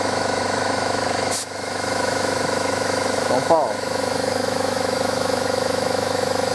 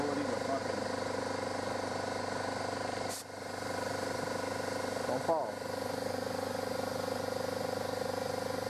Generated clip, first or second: first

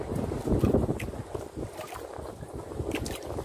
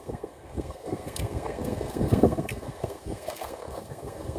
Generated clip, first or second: second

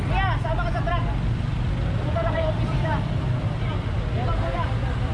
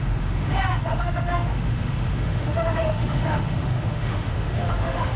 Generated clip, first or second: second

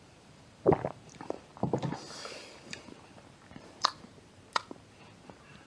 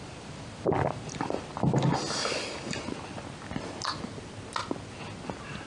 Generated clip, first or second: first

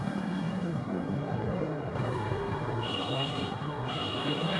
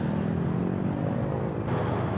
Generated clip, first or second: first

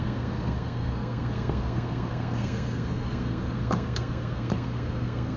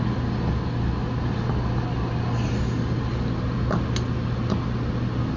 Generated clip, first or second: first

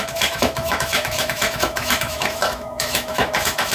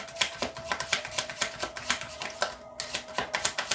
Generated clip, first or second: first